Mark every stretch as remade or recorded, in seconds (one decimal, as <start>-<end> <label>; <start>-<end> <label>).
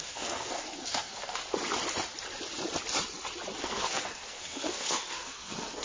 0.0-1.4 remade; 1.4-3.6 recorded; 3.6-5.8 remade